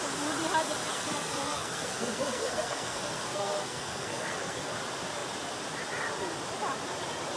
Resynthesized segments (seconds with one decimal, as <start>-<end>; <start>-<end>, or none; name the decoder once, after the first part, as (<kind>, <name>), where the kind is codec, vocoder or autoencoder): 0.9-4.7 (codec, SNAC)